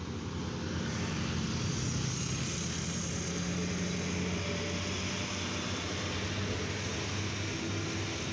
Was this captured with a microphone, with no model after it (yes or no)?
yes